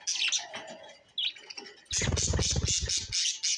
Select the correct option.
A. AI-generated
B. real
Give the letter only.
B